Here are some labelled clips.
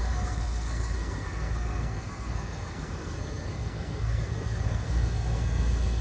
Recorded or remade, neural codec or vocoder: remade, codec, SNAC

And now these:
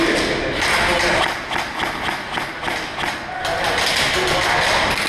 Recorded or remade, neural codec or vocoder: recorded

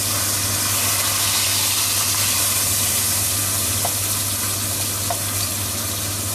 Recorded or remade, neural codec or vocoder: recorded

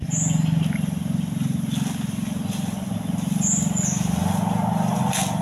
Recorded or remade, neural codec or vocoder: recorded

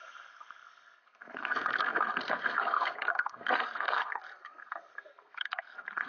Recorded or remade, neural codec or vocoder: remade, codec, SNAC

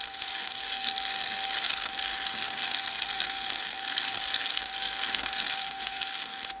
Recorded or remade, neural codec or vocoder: remade, codec, SNAC